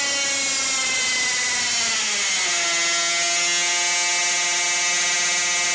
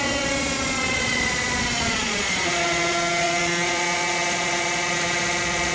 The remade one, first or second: second